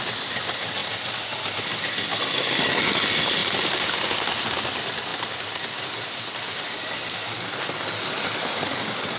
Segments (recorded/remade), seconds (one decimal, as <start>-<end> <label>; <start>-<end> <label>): 0.0-3.4 recorded; 3.4-3.9 remade; 3.9-5.1 recorded; 5.1-7.5 remade; 7.5-9.2 recorded